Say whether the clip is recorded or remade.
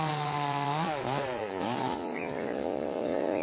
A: remade